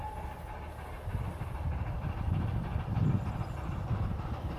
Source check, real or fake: fake